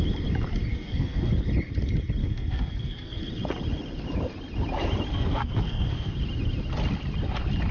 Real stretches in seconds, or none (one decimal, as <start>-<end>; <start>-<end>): 0.0-0.7; 1.3-2.2; 3.2-5.1; 6.1-7.7